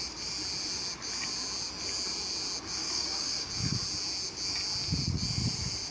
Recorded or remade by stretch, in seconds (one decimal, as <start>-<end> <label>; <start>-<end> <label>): 0.0-2.8 recorded; 2.8-3.5 remade; 3.5-5.9 recorded